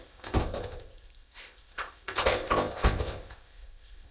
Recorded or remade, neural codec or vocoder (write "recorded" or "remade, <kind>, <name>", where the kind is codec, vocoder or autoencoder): remade, codec, ZipCodec